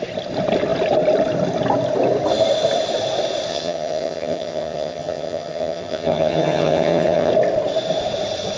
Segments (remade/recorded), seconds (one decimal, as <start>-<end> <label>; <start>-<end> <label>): 0.0-3.5 recorded; 3.5-7.3 remade; 7.3-8.6 recorded